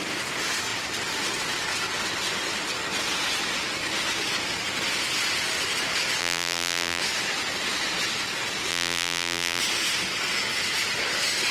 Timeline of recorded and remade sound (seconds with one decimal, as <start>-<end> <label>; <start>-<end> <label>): 0.0-6.2 recorded; 6.2-7.0 remade; 7.0-8.7 recorded; 8.7-9.6 remade; 9.6-11.5 recorded